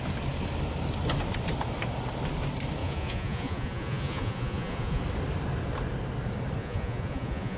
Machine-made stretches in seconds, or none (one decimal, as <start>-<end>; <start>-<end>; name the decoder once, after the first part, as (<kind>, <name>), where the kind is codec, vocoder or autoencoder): 2.8-5.0 (vocoder, Vocos); 6.6-7.6